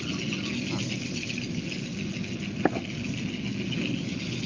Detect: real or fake real